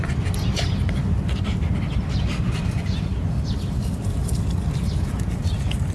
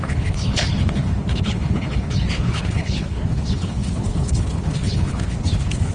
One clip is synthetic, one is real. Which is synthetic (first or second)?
second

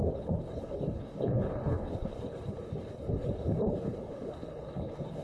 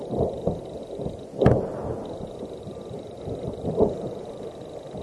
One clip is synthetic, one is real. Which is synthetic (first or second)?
first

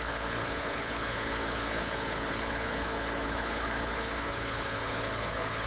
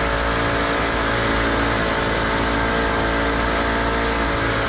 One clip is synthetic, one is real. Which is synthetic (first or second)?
first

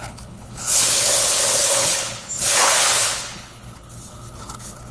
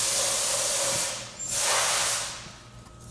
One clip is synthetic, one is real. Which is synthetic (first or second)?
first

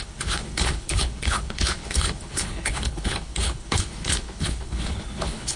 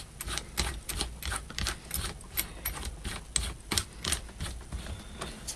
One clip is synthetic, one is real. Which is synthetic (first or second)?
first